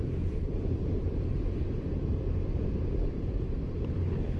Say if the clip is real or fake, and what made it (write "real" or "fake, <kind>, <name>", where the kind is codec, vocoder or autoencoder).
fake, vocoder, BigVGAN v2